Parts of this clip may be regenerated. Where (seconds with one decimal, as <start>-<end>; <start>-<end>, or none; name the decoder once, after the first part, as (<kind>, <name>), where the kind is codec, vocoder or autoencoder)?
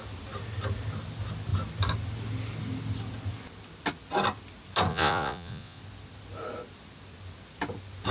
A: 4.9-5.8 (vocoder, Vocos)